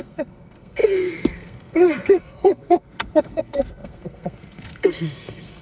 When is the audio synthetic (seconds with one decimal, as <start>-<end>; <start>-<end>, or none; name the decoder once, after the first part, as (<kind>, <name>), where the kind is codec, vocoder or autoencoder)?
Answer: 0.0-5.6 (codec, SNAC)